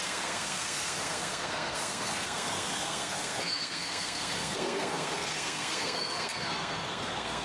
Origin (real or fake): fake